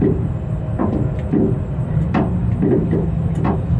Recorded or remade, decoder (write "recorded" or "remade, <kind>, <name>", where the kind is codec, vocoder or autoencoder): remade, vocoder, BigVGAN v2